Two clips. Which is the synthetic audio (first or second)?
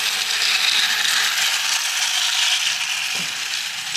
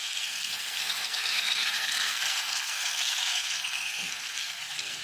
second